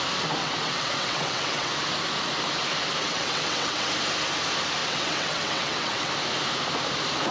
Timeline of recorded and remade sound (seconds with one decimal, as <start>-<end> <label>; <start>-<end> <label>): 0.0-0.4 recorded; 0.4-1.7 remade; 1.7-3.0 recorded; 3.0-3.9 remade; 3.9-4.8 recorded; 4.8-6.1 remade; 6.1-7.3 recorded